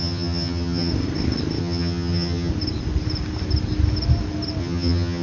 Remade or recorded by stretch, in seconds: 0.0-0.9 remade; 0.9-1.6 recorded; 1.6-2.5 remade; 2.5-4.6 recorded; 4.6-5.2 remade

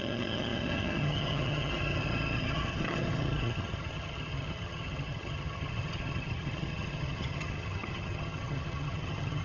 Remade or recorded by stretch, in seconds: 0.0-9.4 remade